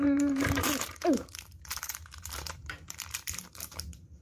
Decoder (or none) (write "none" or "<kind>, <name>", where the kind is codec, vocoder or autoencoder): vocoder, BigVGAN v2